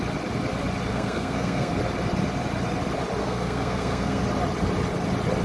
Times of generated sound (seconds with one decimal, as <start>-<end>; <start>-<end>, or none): 0.9-1.7; 3.2-4.2